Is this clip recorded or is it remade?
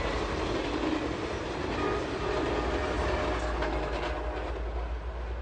recorded